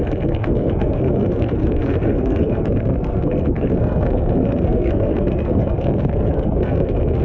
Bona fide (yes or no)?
no